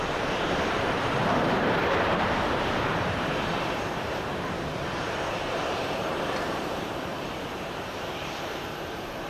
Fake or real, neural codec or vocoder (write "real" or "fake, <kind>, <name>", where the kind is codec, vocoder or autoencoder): fake, vocoder, BigVGAN v2